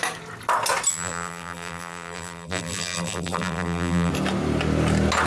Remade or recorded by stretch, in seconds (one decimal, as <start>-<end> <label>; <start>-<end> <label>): 0.0-0.9 recorded; 0.9-4.1 remade; 4.1-5.3 recorded